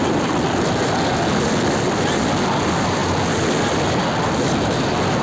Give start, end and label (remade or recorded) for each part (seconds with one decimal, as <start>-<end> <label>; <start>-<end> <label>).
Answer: 0.0-5.2 recorded